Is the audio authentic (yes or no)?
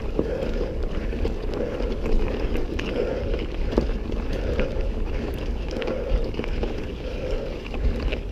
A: no